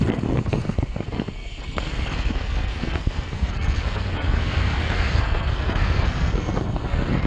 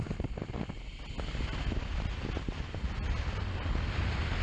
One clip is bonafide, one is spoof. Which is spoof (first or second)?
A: first